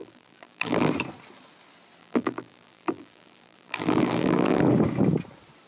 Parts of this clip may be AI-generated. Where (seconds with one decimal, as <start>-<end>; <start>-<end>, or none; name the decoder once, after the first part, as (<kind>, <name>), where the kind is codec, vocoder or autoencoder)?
0.0-0.9 (vocoder, BigVGAN v2); 2.0-4.6